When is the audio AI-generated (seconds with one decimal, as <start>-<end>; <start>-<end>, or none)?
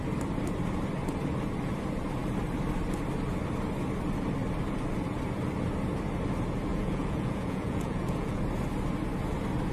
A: 6.7-8.4